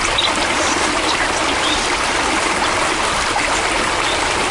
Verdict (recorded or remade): recorded